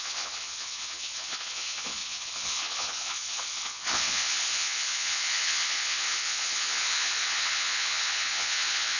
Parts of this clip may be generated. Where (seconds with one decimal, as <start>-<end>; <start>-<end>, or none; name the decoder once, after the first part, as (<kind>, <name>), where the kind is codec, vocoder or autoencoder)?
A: 0.0-9.0 (vocoder, Vocos)